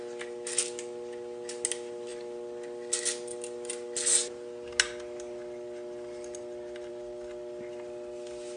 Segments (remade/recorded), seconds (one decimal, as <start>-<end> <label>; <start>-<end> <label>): 0.0-8.6 recorded